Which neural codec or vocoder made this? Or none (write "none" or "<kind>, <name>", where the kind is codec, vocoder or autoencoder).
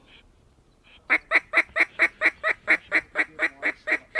none